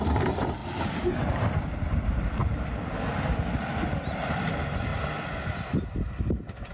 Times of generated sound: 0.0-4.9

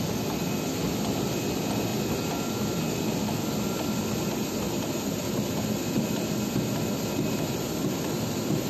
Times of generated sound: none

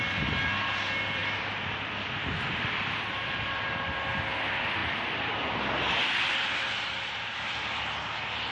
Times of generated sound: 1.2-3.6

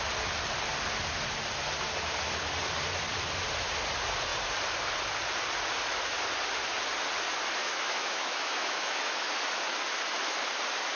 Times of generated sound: 7.6-9.3

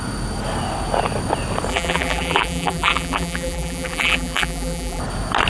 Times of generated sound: 1.7-5.0

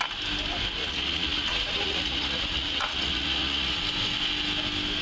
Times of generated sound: 0.8-3.8